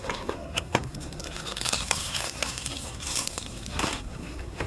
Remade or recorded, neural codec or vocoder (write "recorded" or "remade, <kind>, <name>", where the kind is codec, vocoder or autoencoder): remade, codec, SNAC